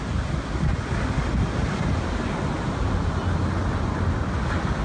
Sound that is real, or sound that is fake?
real